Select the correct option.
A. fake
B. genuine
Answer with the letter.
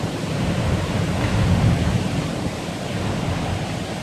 B